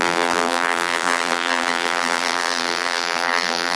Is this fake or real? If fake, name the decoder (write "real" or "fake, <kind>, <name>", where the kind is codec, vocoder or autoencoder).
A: fake, vocoder, BigVGAN v2